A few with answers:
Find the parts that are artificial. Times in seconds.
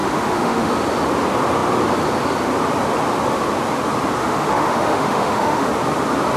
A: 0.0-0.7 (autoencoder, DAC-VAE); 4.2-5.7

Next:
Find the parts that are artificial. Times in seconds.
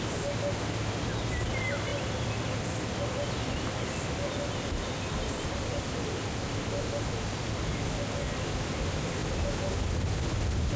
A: none